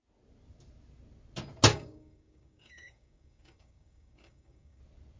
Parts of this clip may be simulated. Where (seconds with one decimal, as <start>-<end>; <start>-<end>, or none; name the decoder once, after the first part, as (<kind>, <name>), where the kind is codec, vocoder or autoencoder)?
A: 1.7-4.8 (codec, DAC)